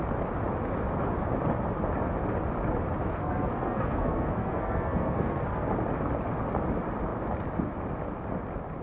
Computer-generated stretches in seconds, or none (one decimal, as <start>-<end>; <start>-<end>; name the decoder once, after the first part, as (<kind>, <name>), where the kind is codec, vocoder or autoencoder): 3.0-5.7 (codec, SNAC)

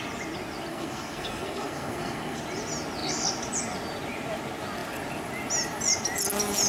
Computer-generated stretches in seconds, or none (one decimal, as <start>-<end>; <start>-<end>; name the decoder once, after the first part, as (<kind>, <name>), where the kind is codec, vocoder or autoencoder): 0.7-2.4 (codec, SNAC)

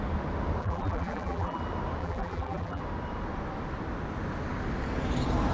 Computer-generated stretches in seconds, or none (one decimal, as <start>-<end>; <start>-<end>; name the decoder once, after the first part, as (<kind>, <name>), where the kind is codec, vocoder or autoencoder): 0.6-1.6 (vocoder, BigVGAN v2); 2.0-2.8

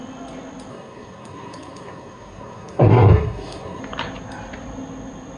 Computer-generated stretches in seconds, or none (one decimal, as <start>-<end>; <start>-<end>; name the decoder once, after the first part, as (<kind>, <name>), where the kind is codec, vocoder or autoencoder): 0.7-3.8 (codec, SNAC)

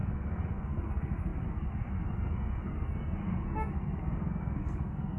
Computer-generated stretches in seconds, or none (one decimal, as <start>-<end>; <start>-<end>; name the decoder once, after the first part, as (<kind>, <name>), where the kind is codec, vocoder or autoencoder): 0.0-5.2 (codec, SNAC)

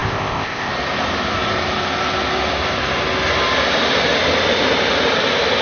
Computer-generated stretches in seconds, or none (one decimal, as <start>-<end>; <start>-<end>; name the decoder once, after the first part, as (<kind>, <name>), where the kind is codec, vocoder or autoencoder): 0.0-0.7 (codec, ZipCodec)